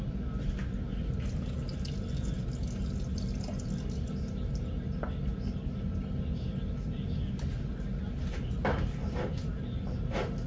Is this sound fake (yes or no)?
no